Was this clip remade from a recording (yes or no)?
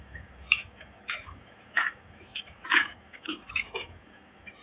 yes